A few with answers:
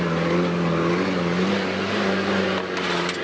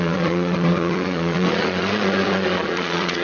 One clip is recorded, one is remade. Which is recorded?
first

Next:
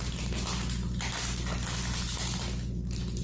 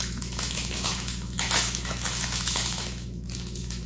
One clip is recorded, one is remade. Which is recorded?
first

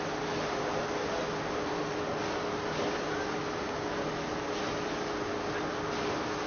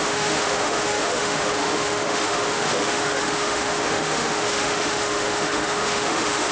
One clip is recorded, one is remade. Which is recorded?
first